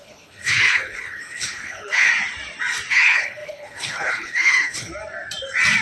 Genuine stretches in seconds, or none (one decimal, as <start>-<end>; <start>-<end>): 2.1-2.9; 4.9-5.8